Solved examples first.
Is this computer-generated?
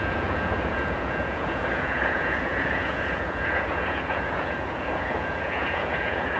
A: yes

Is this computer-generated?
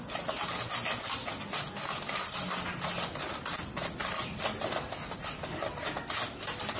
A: no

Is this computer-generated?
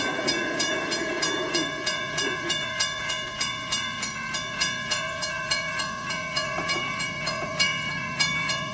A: yes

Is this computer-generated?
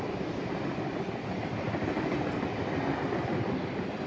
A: no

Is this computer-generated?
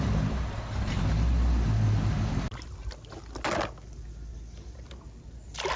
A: no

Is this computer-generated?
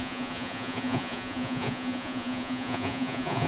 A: yes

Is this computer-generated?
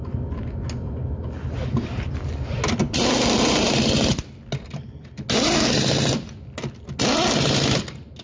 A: no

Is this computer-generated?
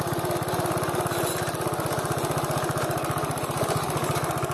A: no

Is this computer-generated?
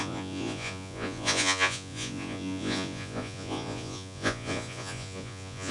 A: yes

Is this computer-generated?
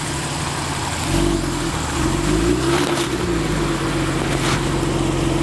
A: no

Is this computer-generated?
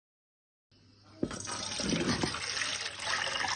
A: no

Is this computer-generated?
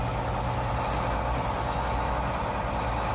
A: no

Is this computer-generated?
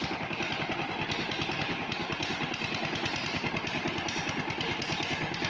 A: no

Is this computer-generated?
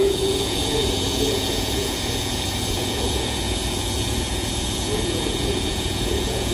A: yes